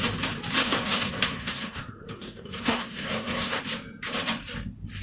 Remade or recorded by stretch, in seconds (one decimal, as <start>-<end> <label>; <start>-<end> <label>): 0.0-0.6 recorded; 0.6-3.6 remade; 3.6-5.0 recorded